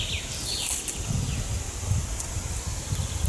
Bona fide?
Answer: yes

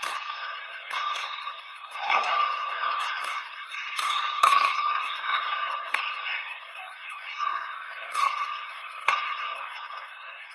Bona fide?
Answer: no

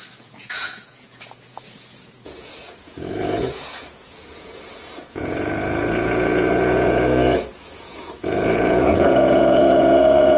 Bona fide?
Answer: no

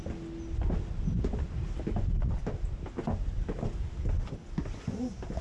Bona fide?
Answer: yes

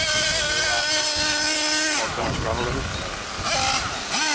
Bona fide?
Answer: yes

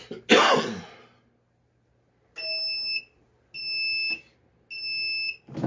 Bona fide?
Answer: yes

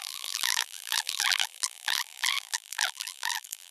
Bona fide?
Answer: no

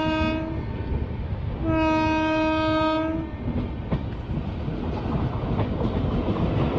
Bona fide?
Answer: yes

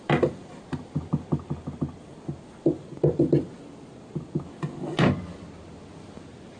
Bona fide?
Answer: yes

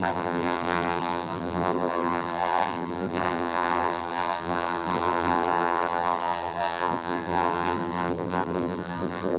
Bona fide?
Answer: no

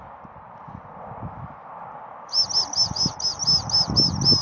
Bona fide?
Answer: yes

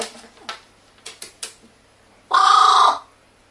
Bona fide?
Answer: yes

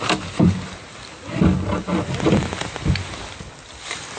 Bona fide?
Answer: yes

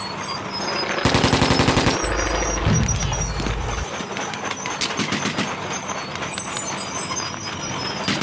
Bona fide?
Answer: yes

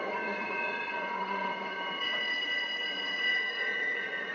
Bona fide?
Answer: no